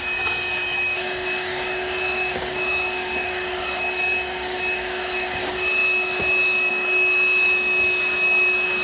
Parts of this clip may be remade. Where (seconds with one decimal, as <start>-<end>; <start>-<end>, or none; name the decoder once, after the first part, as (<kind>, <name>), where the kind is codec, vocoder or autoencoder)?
0.0-8.8 (codec, DAC)